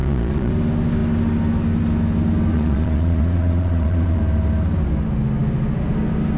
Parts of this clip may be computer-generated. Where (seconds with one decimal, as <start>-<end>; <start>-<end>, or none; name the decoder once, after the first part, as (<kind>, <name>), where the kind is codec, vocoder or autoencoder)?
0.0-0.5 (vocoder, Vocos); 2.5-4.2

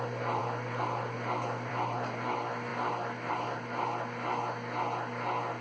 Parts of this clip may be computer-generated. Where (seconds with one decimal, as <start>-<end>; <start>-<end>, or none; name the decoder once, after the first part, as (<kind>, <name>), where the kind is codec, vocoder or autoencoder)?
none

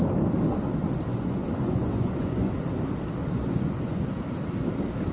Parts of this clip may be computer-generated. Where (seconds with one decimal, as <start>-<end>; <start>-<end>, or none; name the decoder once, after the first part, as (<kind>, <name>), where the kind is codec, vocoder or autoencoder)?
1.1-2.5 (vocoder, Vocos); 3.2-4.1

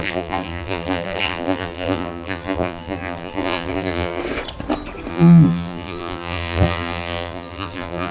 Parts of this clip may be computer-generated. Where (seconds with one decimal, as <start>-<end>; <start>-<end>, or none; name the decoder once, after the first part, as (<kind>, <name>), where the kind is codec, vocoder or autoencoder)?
0.0-4.2 (vocoder, BigVGAN v2); 5.1-8.1